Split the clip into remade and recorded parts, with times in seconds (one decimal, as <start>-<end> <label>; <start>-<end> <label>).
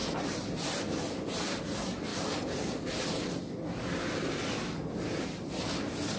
0.0-6.2 recorded